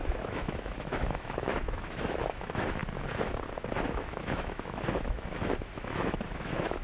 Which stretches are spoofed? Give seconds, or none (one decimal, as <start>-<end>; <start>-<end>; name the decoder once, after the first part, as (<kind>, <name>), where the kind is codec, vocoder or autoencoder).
0.0-2.8 (autoencoder, DAC-VAE); 3.9-6.8